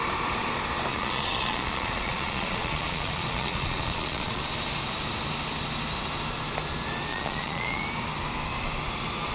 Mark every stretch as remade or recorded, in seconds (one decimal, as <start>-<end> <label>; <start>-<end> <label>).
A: 0.0-0.9 recorded; 0.9-4.4 remade; 4.4-7.1 recorded; 7.1-7.8 remade; 7.8-9.3 recorded